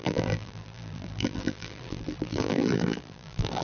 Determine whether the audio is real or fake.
fake